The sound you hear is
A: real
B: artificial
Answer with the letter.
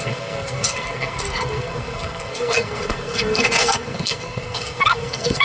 B